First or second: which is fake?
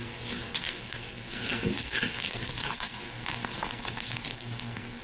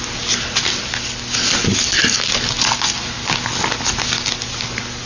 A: first